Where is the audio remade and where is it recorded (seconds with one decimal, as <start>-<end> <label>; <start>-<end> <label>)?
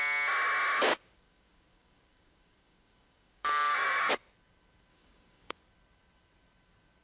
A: 0.0-0.9 recorded; 0.9-4.1 remade; 4.1-4.9 recorded; 4.9-5.6 remade; 5.6-7.0 recorded